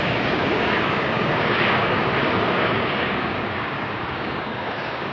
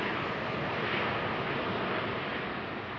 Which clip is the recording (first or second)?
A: second